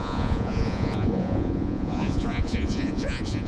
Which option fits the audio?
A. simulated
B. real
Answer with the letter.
A